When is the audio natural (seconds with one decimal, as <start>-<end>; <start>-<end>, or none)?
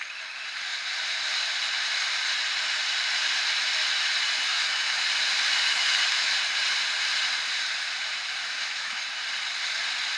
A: 0.0-4.5; 5.0-5.6; 6.4-8.4; 9.0-10.2